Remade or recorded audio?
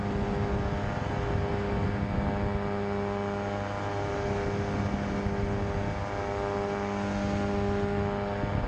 recorded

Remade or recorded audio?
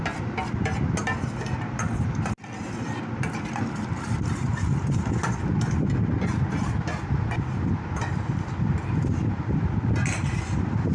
recorded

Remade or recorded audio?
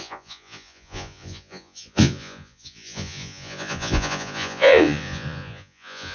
remade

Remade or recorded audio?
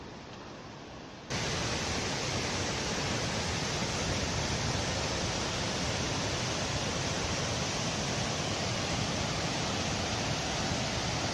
remade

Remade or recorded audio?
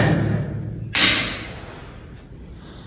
recorded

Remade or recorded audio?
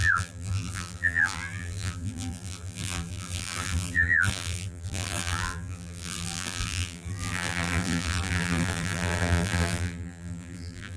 remade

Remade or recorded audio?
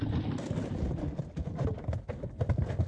recorded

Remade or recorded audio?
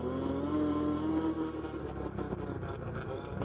recorded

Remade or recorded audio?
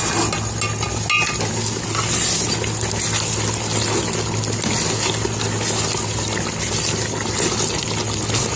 recorded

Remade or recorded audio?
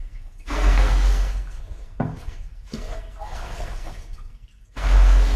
remade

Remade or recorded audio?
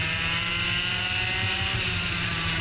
remade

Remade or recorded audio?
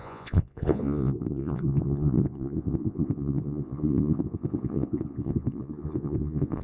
remade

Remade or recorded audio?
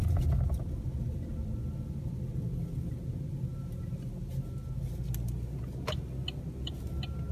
recorded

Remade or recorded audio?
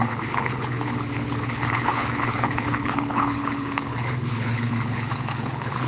remade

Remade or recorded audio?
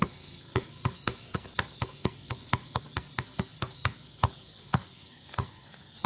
remade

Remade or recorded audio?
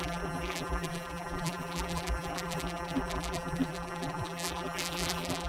remade